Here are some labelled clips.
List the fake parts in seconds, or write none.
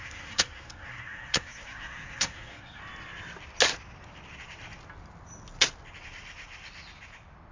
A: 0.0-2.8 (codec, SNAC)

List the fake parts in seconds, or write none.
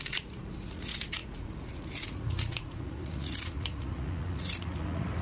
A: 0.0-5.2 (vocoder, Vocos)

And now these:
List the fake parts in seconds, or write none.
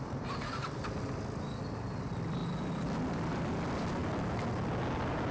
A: none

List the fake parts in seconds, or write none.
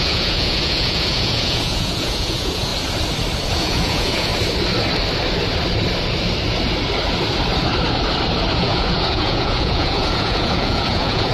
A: 0.0-2.7 (vocoder, Vocos); 3.6-4.3; 8.5-11.3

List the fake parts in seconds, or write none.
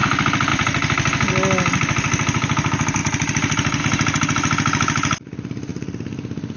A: none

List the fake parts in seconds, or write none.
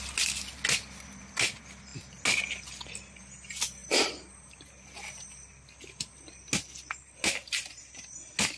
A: none